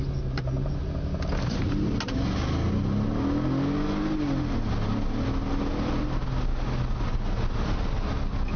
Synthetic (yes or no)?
no